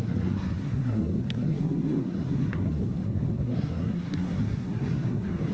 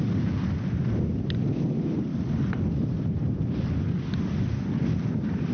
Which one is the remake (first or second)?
first